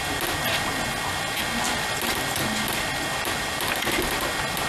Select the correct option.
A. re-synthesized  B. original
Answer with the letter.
B